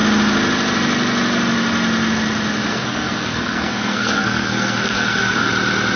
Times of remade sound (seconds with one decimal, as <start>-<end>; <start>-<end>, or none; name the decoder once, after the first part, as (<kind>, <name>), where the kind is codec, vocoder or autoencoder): 2.7-5.5 (codec, SNAC)